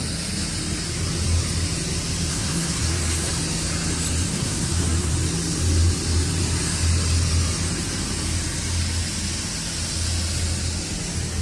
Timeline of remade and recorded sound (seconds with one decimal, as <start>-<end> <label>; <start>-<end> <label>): 0.0-2.3 recorded; 2.3-3.3 remade; 3.3-4.3 recorded; 4.3-5.1 remade; 5.1-11.4 recorded